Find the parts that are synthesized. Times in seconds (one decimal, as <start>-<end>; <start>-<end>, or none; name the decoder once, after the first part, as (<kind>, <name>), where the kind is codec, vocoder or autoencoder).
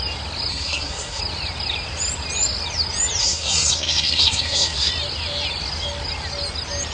0.5-1.2 (codec, SNAC); 3.2-4.9